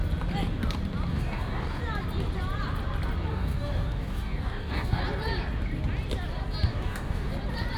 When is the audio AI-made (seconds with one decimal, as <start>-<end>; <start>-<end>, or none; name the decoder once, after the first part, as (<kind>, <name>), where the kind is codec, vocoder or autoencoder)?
1.1-1.8 (codec, DAC); 3.3-5.0; 6.7-7.3